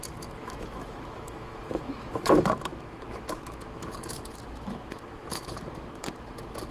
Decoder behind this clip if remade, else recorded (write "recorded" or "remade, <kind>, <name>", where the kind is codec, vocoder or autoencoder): remade, autoencoder, DAC-VAE